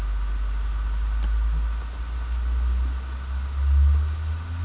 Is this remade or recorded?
recorded